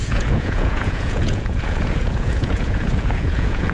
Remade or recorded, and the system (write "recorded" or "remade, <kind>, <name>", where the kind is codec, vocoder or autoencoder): remade, vocoder, Vocos